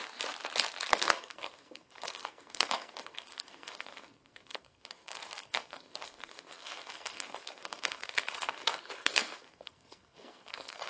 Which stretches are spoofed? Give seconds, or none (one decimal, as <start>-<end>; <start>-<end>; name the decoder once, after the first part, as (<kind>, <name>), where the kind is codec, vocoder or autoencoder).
0.9-10.9 (codec, SNAC)